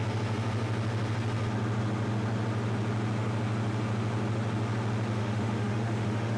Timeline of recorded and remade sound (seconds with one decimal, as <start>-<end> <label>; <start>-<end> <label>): 0.0-5.2 recorded; 5.2-6.4 remade